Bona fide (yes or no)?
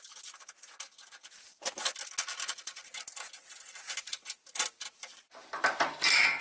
yes